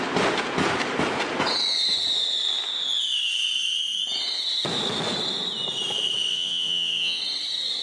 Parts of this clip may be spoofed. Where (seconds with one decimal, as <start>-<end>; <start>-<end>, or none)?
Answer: 6.3-7.2